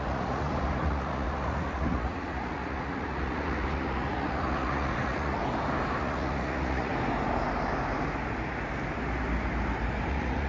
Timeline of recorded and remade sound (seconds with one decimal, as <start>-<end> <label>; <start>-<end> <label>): 0.0-5.4 remade; 5.4-6.0 recorded; 6.0-6.9 remade; 6.9-10.1 recorded; 10.1-10.5 remade